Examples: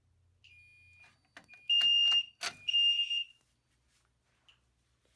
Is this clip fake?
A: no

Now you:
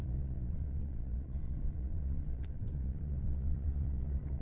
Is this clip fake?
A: yes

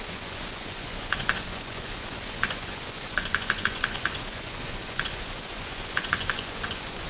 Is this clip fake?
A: yes